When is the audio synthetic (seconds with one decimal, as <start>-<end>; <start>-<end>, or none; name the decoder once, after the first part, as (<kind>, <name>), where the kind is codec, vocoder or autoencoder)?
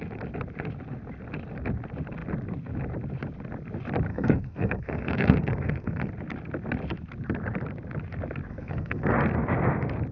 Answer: 4.1-6.1 (codec, SNAC); 8.5-9.1